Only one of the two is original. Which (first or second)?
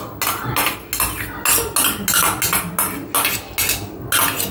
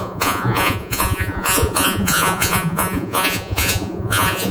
first